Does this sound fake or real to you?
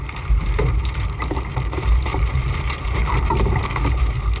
fake